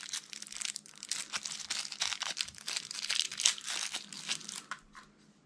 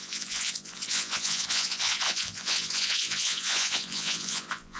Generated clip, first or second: second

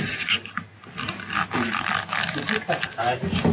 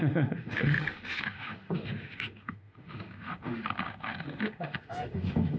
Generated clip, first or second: second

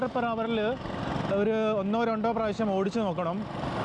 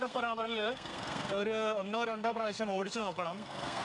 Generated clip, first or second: second